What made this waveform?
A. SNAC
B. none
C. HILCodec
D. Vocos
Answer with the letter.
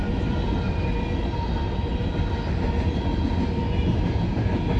B